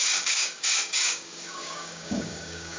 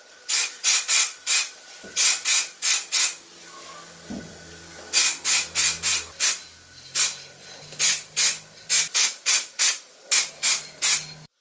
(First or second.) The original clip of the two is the second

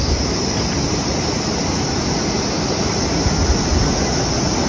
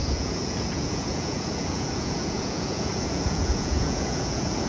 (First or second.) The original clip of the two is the first